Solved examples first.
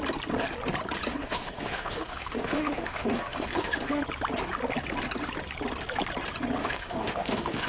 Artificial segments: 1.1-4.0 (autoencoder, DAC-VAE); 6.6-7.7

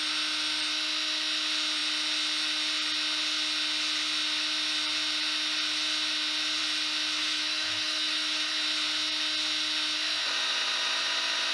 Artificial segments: 7.2-8.5 (autoencoder, DAC-VAE)

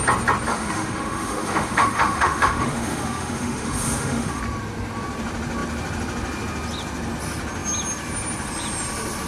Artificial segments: 0.5-4.4 (autoencoder, DAC-VAE)

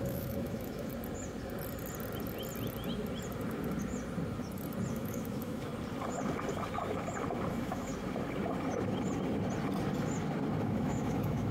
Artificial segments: 0.0-0.9 (autoencoder, DAC-VAE); 4.9-5.7; 7.5-7.9; 10.6-11.5